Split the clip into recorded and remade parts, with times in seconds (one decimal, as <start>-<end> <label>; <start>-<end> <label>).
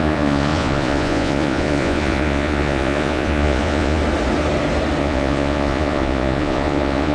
0.0-4.0 remade; 4.0-5.0 recorded; 5.0-7.1 remade